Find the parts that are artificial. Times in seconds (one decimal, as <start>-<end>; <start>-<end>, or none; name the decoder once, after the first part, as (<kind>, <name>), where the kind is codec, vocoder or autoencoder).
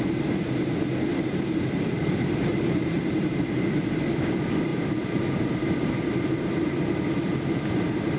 1.1-3.6 (vocoder, BigVGAN v2); 4.7-6.9